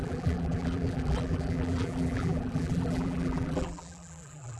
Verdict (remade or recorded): remade